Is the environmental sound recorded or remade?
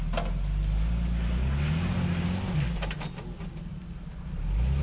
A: recorded